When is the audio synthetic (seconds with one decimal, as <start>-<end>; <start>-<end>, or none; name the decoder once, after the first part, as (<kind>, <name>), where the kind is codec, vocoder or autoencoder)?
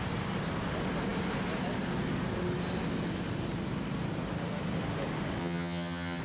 5.4-6.2 (vocoder, HiFi-GAN)